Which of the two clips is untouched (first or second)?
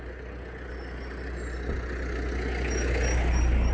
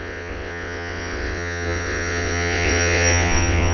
first